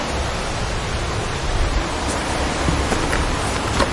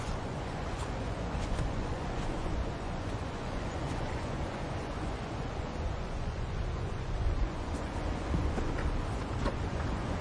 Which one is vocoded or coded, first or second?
second